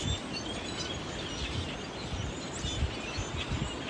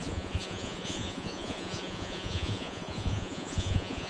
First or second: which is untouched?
first